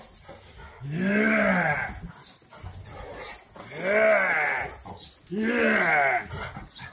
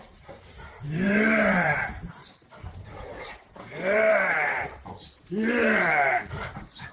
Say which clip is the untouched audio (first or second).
first